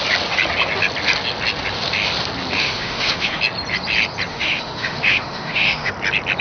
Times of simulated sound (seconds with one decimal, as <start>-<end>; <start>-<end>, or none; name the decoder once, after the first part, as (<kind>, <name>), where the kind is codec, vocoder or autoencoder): 2.6-3.4 (autoencoder, DAC-VAE); 4.3-5.9